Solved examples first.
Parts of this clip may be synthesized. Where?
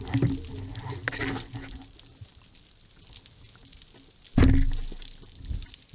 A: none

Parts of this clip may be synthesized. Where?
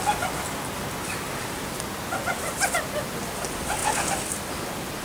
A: none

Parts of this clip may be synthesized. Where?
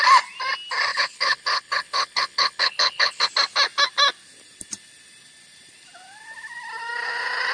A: 0.9-3.3 (codec, HILCodec)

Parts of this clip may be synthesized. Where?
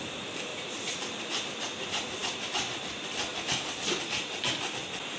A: 0.5-1.0 (vocoder, Vocos)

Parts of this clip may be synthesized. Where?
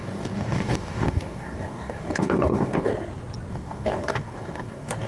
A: 0.0-2.9 (codec, DAC); 3.5-5.1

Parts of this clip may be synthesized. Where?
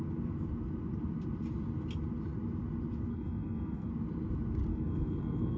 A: 3.1-3.9 (codec, SNAC); 4.7-5.6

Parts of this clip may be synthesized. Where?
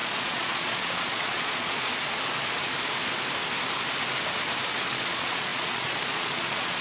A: 0.0-1.9 (vocoder, Vocos); 4.9-6.8